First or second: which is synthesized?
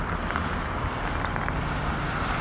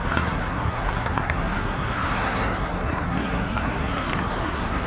second